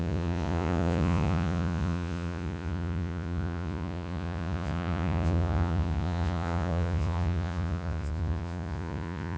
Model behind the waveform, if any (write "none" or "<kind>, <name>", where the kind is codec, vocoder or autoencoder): vocoder, Vocos